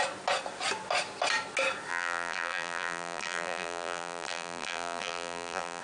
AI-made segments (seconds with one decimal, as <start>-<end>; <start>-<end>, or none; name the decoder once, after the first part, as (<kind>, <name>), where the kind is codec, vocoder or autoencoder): 1.9-5.8 (vocoder, BigVGAN v2)